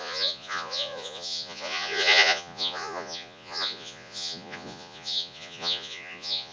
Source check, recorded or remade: remade